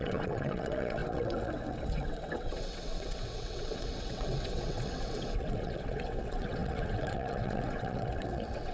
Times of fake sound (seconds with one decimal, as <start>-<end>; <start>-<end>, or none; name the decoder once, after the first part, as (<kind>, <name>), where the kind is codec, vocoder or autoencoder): 0.0-8.7 (vocoder, WaveNeXt)